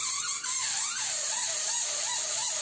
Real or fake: real